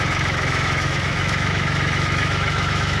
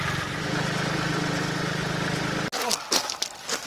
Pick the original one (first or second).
second